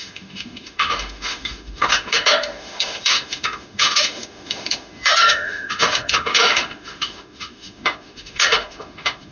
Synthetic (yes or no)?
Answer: yes